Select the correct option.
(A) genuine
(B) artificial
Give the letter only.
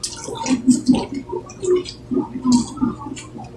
A